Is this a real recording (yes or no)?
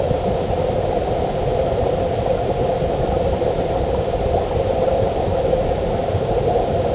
yes